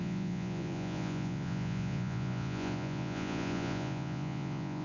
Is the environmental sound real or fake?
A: fake